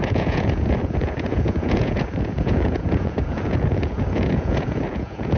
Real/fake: fake